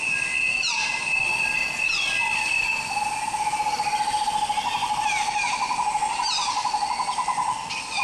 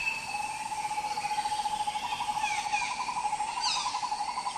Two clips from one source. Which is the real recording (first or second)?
first